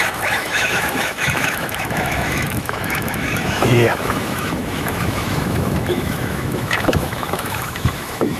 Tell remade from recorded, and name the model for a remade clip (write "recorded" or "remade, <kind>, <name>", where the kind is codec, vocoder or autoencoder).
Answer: remade, autoencoder, DAC-VAE